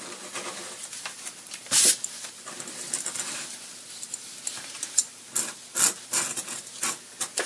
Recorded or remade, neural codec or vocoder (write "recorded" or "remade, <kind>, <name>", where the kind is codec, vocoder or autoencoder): recorded